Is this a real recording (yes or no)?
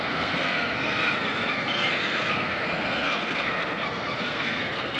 no